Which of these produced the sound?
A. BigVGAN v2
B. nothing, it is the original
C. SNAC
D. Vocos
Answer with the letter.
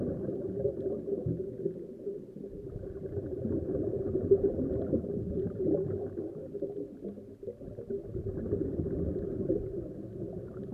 B